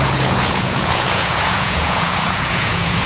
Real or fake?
fake